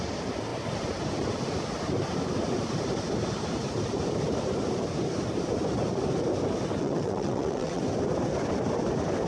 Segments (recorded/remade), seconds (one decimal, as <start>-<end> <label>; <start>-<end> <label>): 0.0-6.8 recorded; 6.8-7.8 remade; 7.8-9.3 recorded